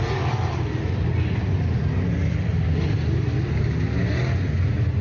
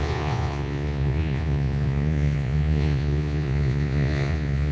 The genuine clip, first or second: first